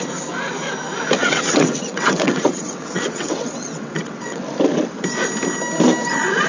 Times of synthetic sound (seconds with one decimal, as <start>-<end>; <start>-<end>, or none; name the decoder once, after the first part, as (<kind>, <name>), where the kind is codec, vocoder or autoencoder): 1.2-4.4 (vocoder, WaveNeXt)